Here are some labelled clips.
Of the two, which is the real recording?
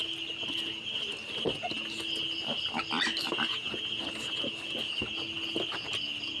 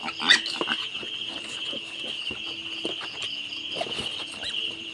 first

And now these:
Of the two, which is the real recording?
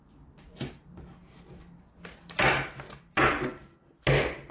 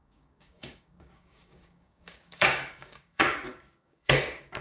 first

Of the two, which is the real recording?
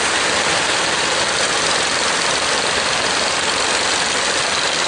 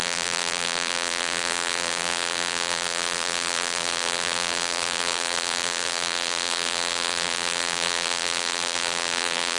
first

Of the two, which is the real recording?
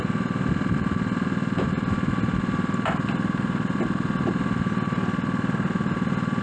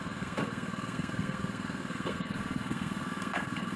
first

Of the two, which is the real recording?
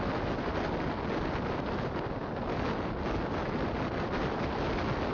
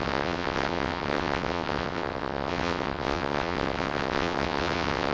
first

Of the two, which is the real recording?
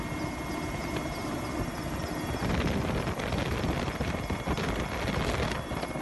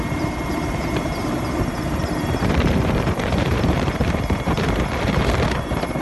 first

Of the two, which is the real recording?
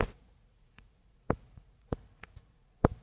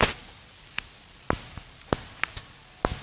second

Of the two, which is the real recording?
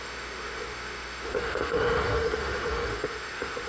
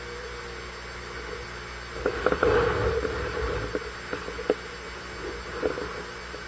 second